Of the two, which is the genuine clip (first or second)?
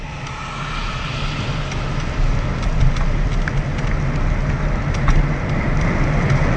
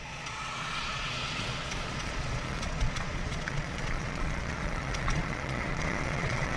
first